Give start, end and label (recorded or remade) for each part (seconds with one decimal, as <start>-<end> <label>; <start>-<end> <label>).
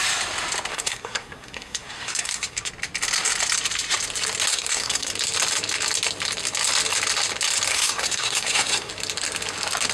0.0-0.7 recorded; 0.7-2.7 remade; 2.7-4.5 recorded; 4.5-5.1 remade; 5.1-7.7 recorded; 7.7-8.9 remade; 8.9-9.9 recorded